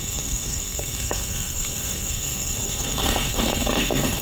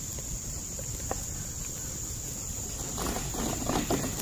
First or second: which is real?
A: second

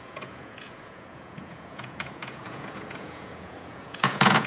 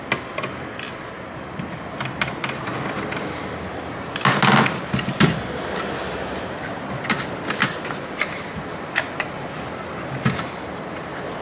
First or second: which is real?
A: second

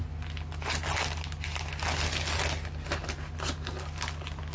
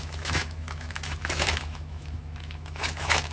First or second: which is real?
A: first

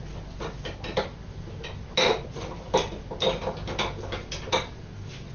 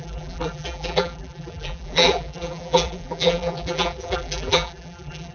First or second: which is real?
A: first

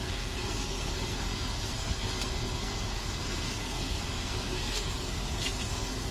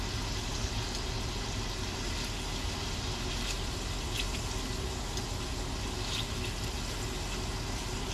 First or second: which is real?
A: second